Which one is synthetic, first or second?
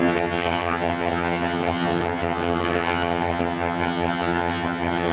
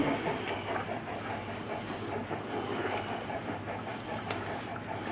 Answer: first